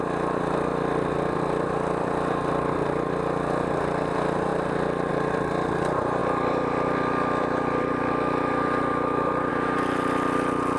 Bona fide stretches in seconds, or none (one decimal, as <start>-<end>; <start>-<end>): 0.0-6.2; 9.5-10.8